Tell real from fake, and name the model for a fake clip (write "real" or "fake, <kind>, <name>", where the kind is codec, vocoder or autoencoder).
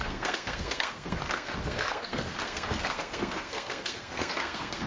fake, codec, SNAC